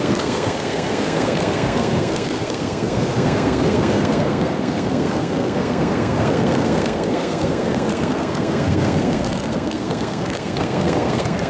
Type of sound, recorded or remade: remade